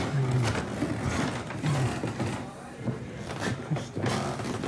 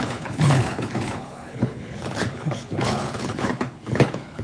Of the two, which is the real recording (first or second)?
first